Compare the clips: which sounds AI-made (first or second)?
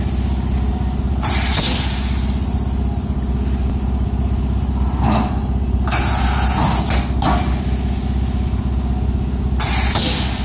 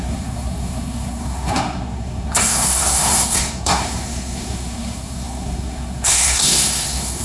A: second